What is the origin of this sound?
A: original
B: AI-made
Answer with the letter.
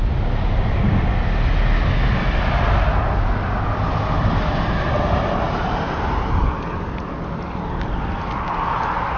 A